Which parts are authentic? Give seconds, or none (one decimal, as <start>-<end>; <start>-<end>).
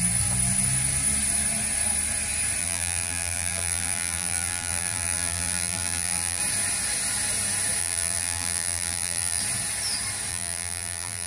0.0-2.6; 6.4-7.8; 9.4-10.3